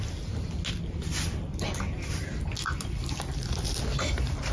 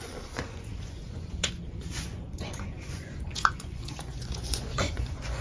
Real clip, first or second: first